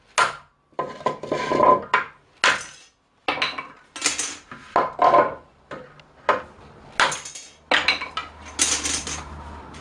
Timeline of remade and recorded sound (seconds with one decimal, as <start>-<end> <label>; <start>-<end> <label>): 0.0-9.8 recorded